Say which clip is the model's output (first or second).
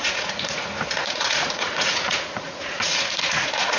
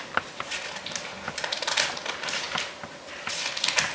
first